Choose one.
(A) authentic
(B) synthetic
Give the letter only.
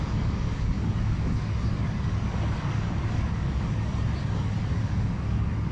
B